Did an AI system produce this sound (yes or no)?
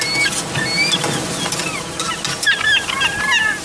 no